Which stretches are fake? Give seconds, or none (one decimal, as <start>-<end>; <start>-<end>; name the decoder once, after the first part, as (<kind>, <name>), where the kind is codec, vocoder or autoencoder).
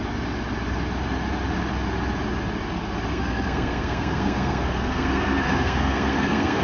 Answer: 3.1-6.6 (codec, SNAC)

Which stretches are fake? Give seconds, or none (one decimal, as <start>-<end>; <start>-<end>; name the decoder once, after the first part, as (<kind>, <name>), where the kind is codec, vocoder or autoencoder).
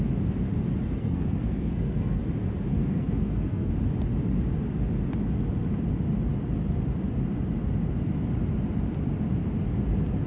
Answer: 1.0-2.2 (codec, SNAC); 2.7-3.7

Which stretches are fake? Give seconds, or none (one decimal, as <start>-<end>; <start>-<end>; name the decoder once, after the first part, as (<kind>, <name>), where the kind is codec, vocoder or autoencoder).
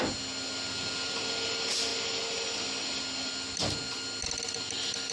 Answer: none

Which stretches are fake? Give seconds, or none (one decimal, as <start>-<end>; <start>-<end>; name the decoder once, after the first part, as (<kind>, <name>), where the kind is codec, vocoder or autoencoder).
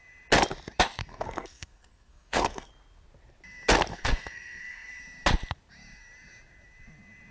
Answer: 1.0-2.7 (codec, SNAC); 3.9-5.0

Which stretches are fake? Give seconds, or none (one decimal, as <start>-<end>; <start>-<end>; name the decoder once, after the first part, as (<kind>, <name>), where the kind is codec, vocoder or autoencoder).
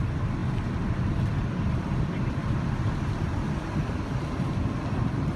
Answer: none